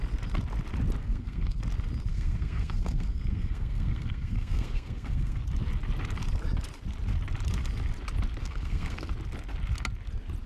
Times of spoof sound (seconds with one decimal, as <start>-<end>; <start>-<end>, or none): 1.0-1.6; 2.1-5.4; 8.4-9.1